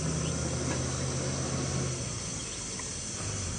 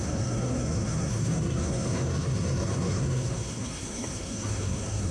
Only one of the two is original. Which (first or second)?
first